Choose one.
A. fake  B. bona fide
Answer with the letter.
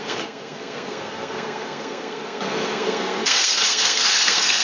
A